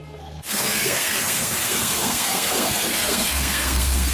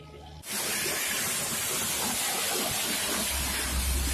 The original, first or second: second